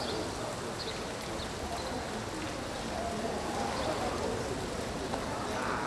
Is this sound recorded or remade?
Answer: recorded